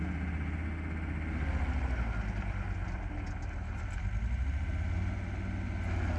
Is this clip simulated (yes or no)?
no